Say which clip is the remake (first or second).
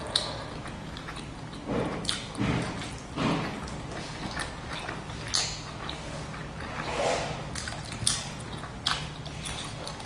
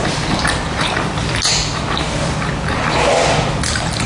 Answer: second